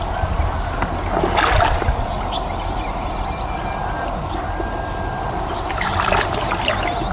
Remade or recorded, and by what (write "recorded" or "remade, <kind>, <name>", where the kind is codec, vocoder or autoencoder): recorded